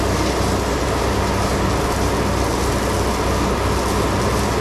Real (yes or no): yes